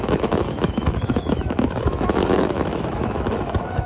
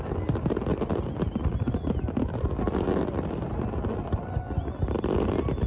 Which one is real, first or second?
second